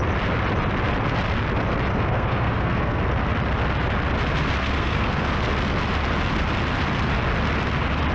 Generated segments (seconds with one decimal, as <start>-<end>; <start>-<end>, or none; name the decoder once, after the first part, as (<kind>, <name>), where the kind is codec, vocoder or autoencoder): 1.9-3.0 (codec, SNAC); 4.6-5.2